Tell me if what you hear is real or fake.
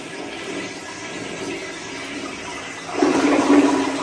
real